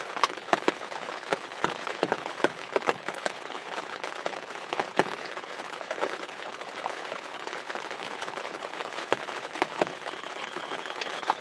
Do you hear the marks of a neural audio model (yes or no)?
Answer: yes